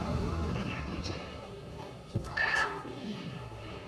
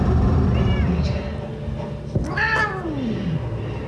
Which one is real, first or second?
second